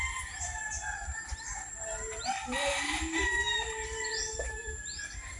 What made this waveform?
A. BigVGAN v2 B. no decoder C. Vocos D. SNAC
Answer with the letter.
A